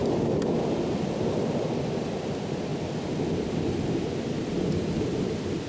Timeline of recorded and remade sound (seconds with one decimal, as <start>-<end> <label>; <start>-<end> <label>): 0.0-1.6 recorded; 1.6-2.7 remade; 2.7-4.4 recorded; 4.4-5.7 remade